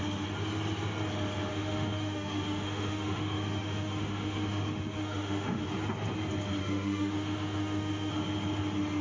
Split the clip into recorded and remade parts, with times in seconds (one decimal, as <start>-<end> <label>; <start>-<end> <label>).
0.0-1.5 recorded; 1.5-5.6 remade; 5.6-6.6 recorded; 6.6-8.1 remade; 8.1-9.0 recorded